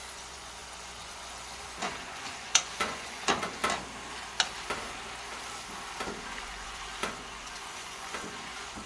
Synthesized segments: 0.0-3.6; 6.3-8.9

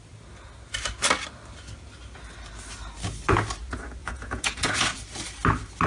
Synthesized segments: 4.0-5.0

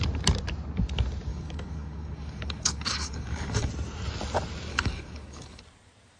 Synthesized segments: 1.3-3.7; 4.7-5.6

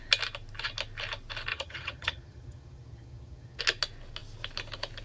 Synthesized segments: 1.5-3.6

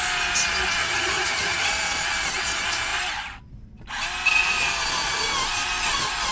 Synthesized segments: 0.8-1.7